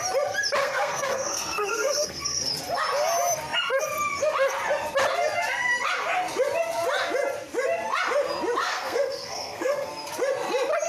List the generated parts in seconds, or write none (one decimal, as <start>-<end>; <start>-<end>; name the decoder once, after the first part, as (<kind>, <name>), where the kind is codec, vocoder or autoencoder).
0.6-2.5 (codec, SNAC); 8.6-9.9